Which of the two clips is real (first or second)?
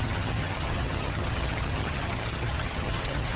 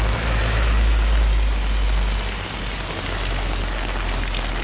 second